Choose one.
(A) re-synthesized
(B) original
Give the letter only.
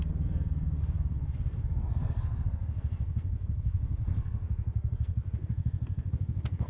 A